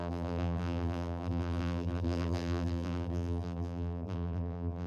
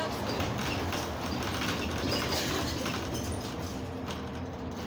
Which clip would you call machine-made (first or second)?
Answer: first